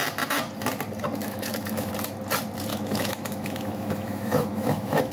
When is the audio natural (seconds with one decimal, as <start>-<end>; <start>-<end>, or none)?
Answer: 0.0-1.2; 1.9-2.7